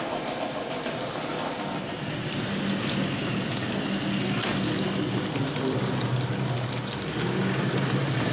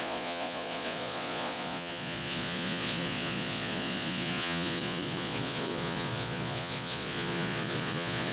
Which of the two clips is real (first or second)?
first